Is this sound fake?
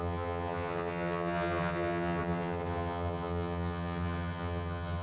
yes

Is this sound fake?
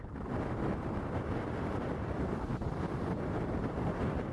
yes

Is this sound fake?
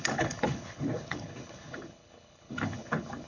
yes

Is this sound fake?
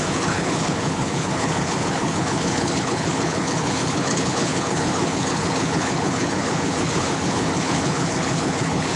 yes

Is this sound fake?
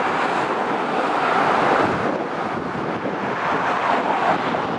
no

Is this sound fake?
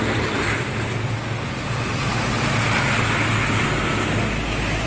no